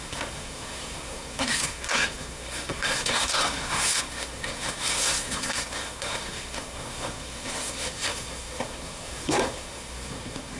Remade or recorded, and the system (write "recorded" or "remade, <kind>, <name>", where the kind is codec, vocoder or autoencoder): remade, codec, SNAC